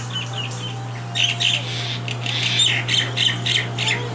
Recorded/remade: recorded